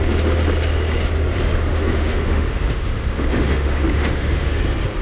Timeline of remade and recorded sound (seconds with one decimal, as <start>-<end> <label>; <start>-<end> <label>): 0.0-1.7 recorded; 1.7-4.6 remade; 4.6-5.0 recorded